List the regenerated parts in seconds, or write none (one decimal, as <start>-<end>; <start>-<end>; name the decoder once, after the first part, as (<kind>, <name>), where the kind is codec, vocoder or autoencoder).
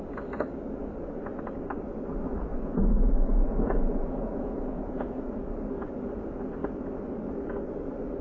2.5-5.6 (vocoder, Vocos)